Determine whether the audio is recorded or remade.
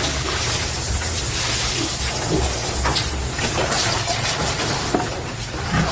recorded